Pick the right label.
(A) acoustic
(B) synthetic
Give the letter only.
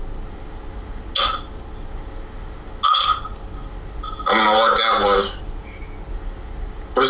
A